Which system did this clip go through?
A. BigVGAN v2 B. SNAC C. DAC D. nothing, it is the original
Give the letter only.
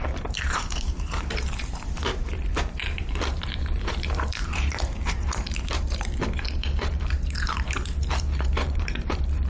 A